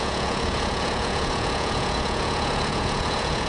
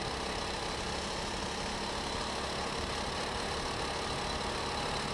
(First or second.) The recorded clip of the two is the second